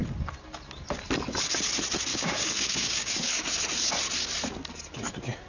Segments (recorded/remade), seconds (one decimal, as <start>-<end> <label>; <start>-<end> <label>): 0.0-2.1 recorded; 2.1-3.3 remade; 3.3-5.5 recorded